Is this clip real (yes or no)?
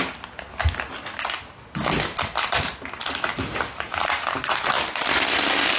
yes